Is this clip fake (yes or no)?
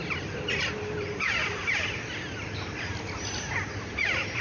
yes